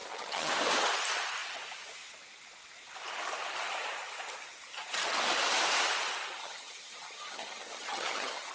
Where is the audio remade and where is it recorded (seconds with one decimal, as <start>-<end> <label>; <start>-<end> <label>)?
0.0-0.5 remade; 0.5-6.4 recorded; 6.4-8.5 remade